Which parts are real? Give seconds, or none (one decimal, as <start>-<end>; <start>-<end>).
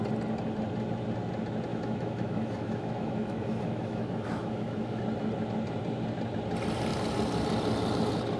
0.0-1.7; 5.0-8.4